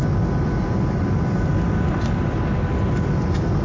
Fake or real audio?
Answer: real